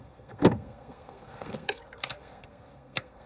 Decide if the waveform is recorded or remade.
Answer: remade